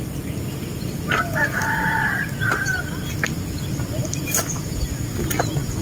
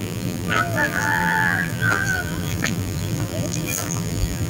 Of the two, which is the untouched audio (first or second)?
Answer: first